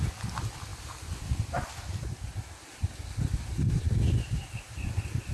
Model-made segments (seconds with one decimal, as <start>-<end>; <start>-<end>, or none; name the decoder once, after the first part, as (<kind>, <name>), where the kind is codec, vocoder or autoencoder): 3.5-4.4 (vocoder, BigVGAN v2)